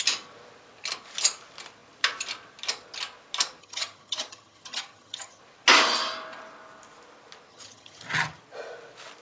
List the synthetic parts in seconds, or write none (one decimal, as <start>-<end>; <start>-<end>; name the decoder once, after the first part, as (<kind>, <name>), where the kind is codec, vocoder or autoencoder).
3.6-5.4 (vocoder, HiFi-GAN); 7.5-8.4